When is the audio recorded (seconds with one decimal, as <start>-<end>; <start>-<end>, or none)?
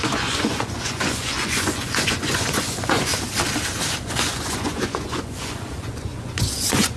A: 3.1-4.0